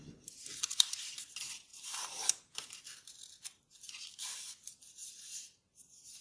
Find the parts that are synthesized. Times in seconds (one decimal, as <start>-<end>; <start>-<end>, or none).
1.7-2.8; 5.0-5.7